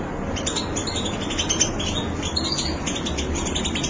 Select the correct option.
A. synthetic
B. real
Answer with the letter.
B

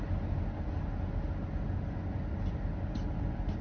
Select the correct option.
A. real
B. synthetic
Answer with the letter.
A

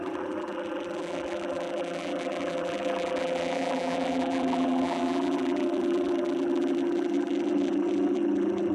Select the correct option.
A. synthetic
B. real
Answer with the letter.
A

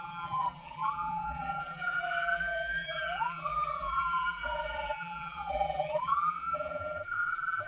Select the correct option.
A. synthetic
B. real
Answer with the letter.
A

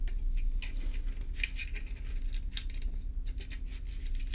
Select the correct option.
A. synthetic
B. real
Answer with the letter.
B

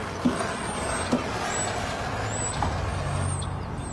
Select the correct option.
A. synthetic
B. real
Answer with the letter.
B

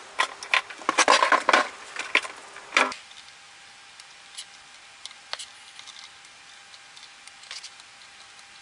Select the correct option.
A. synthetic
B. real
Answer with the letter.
B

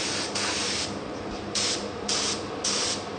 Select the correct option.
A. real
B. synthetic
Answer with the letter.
A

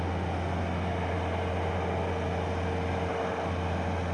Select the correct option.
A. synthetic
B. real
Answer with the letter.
B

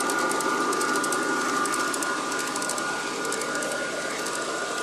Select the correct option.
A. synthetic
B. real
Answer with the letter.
B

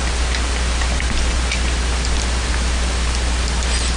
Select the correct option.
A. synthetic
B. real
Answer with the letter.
B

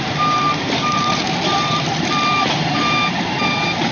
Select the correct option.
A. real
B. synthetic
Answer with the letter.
B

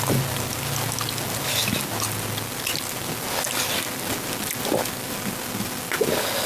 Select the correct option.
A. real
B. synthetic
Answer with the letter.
A